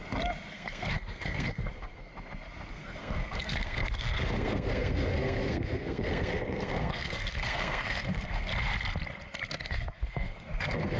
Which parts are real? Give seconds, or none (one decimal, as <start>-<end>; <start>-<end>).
0.0-0.5; 2.1-2.7; 8.5-9.5